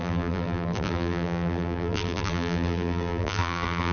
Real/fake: fake